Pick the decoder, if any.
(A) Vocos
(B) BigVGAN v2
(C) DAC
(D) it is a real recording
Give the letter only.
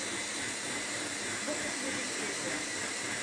B